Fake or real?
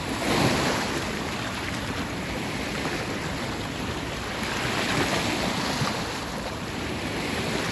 fake